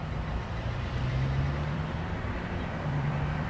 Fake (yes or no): yes